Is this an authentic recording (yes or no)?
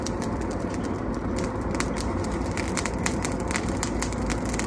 yes